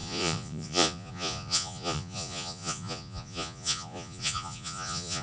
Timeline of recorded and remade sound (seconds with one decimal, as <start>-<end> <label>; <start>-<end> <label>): 0.0-5.2 remade